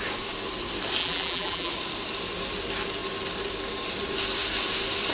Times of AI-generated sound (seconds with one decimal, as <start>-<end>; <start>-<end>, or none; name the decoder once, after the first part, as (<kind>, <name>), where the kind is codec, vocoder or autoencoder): 1.0-1.7 (vocoder, BigVGAN v2)